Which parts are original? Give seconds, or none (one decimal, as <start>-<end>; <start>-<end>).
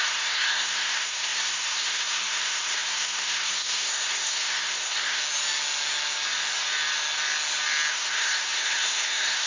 5.2-7.9